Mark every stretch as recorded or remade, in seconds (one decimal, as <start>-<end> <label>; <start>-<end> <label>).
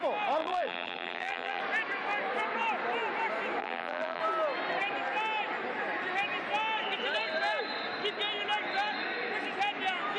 0.0-0.4 recorded; 0.4-1.6 remade; 1.6-3.6 recorded; 3.6-4.2 remade; 4.2-10.2 recorded